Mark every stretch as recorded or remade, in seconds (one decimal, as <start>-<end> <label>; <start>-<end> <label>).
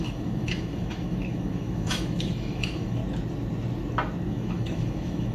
0.0-3.0 remade; 3.0-4.3 recorded; 4.3-5.3 remade